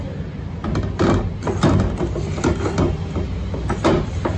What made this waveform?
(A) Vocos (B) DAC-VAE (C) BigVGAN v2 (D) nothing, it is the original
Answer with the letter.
D